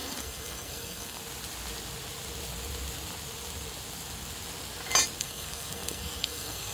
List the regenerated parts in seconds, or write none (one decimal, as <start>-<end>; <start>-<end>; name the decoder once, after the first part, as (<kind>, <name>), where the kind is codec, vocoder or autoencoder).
0.0-1.2 (codec, SNAC); 5.2-6.7